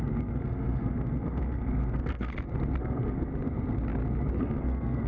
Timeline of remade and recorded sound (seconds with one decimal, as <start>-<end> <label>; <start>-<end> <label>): 0.0-2.3 remade; 2.3-2.8 recorded; 2.8-3.3 remade; 3.3-4.4 recorded; 4.4-5.1 remade